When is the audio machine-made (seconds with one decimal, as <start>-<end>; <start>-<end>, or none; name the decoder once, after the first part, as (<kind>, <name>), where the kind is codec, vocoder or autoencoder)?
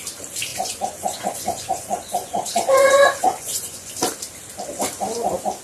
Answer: 0.5-3.9 (vocoder, Vocos)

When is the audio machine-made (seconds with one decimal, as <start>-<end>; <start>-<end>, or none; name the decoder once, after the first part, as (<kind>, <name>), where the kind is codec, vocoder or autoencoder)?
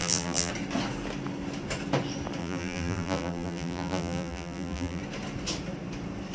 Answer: 0.0-0.5 (vocoder, BigVGAN v2); 2.4-5.0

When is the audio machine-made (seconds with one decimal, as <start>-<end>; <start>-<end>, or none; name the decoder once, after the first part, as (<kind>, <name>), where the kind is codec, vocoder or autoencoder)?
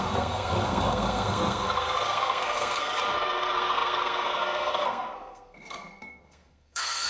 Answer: 0.0-7.1 (codec, SNAC)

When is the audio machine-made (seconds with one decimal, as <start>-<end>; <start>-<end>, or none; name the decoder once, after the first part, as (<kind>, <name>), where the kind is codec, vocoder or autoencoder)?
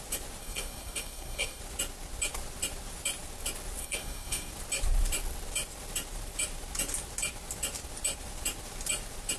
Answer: 0.4-1.6 (codec, SNAC); 3.8-4.5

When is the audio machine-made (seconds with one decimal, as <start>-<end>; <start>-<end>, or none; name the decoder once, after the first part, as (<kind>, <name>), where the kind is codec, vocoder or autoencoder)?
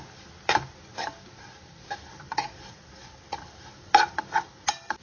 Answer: 0.0-5.0 (vocoder, BigVGAN v2)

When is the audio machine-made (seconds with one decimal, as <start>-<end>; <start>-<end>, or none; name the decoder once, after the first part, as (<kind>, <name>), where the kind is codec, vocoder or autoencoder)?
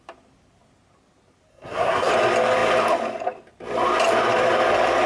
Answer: 1.5-2.1 (codec, SNAC)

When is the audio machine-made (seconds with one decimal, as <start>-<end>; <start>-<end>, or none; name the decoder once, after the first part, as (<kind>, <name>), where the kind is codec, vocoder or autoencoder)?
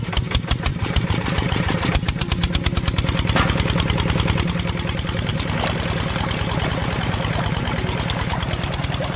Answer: 0.7-2.3 (vocoder, BigVGAN v2)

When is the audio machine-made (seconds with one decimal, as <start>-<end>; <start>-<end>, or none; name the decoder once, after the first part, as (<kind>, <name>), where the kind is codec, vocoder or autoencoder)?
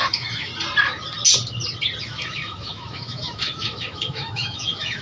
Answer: 0.0-0.5 (autoencoder, DAC-VAE); 2.0-5.0